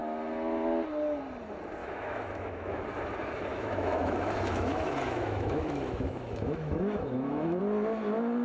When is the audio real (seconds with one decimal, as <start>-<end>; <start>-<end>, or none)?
0.0-1.8; 2.8-3.5; 7.6-8.4